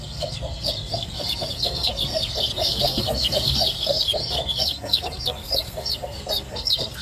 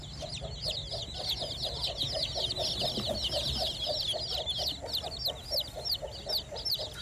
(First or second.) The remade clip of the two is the first